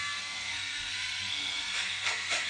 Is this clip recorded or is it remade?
remade